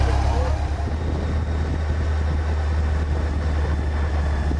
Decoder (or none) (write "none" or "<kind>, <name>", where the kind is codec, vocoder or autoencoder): none